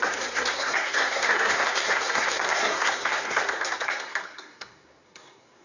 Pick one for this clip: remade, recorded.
remade